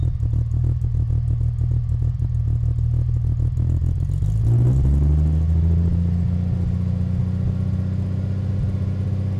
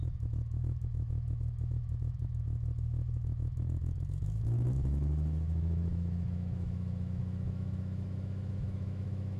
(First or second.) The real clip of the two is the first